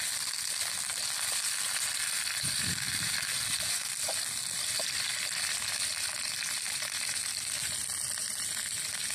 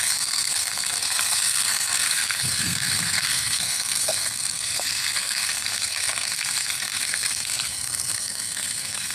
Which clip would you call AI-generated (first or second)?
second